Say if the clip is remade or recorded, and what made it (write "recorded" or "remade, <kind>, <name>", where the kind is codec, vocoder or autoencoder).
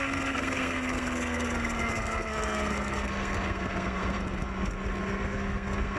remade, codec, SNAC